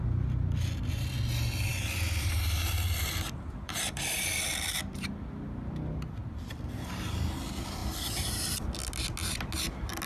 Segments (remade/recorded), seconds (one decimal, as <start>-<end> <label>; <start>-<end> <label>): 0.0-1.7 recorded; 1.7-5.1 remade; 5.1-6.2 recorded; 6.2-6.7 remade; 6.7-7.8 recorded; 7.8-8.8 remade; 8.8-10.1 recorded